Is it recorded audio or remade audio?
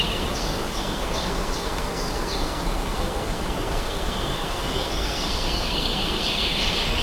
remade